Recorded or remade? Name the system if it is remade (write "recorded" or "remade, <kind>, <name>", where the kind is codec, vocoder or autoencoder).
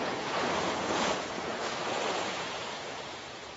remade, vocoder, Vocos